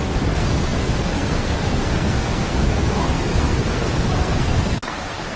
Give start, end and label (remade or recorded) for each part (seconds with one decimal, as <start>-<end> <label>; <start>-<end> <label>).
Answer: 0.0-5.4 remade